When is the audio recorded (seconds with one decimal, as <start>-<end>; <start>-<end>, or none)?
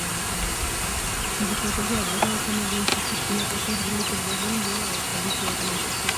0.0-2.9; 3.9-6.2